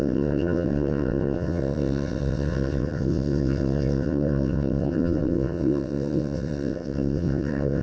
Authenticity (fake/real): fake